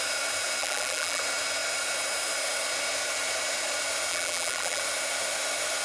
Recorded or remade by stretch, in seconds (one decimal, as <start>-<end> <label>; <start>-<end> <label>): 0.0-0.6 recorded; 0.6-1.2 remade; 1.2-4.1 recorded; 4.1-4.8 remade; 4.8-5.8 recorded